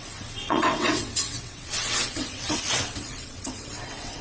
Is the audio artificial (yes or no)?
yes